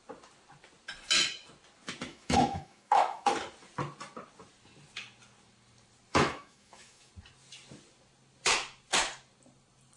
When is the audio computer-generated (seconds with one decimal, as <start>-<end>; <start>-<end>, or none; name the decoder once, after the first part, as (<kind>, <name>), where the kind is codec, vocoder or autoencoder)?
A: 2.1-3.3 (autoencoder, DAC-VAE); 6.1-7.1